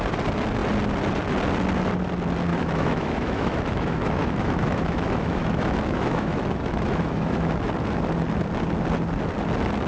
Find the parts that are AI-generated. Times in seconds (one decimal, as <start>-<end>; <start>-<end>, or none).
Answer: 2.5-7.5